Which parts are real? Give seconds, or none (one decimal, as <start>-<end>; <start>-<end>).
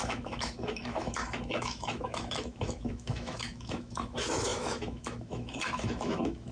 none